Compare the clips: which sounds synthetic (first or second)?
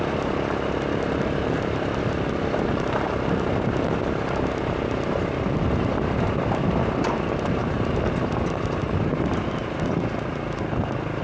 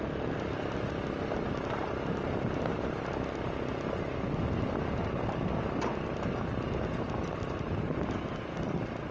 first